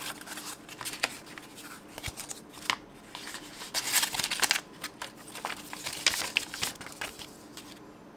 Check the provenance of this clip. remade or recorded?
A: recorded